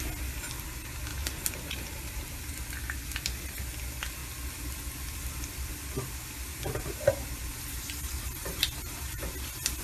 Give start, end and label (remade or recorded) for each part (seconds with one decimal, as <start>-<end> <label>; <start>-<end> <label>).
0.0-1.1 recorded; 1.1-2.7 remade; 2.7-6.5 recorded; 6.5-9.2 remade; 9.2-9.8 recorded